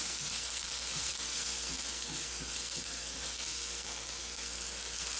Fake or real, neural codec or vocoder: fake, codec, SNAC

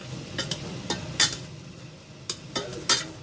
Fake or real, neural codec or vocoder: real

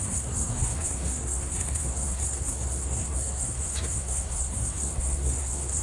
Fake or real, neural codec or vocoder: fake, codec, SNAC